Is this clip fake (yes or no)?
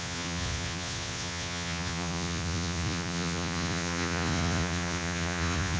yes